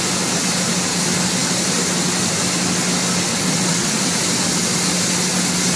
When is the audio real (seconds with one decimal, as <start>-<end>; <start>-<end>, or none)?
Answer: 0.0-3.3; 4.0-5.8